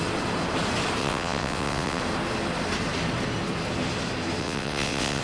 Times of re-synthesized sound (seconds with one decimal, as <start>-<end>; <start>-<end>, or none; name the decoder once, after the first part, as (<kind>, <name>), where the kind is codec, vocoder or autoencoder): 1.0-2.0 (vocoder, WaveNeXt); 4.4-5.2